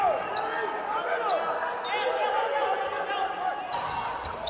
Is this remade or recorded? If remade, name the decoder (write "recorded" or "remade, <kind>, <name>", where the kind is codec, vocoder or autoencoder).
recorded